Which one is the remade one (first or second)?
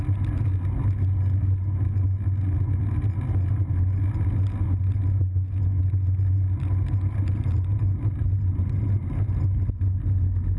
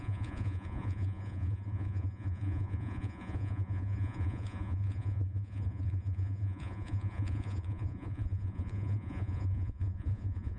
second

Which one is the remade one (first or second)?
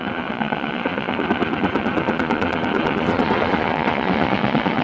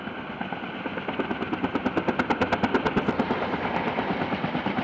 first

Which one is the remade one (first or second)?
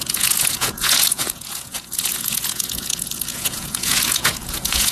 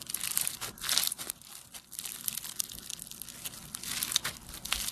first